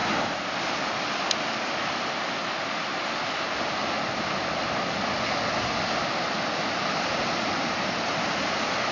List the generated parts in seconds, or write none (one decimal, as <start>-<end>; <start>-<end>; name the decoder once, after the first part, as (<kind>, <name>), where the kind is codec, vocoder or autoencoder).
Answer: none